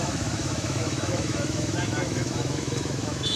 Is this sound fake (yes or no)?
yes